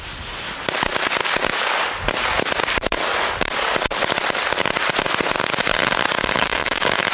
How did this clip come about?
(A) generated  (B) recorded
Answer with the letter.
B